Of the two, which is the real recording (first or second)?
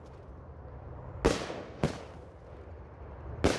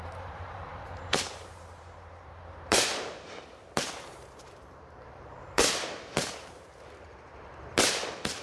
first